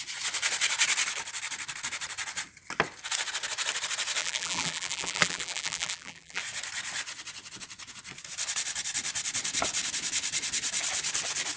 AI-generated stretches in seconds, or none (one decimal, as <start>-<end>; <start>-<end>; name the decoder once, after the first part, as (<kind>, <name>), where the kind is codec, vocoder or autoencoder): 4.2-6.4 (vocoder, BigVGAN v2)